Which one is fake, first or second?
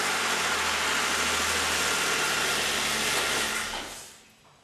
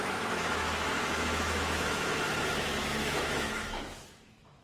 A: second